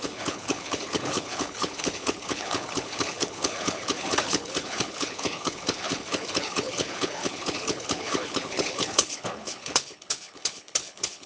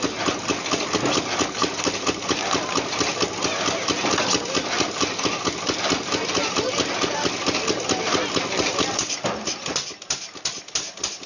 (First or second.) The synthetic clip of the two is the first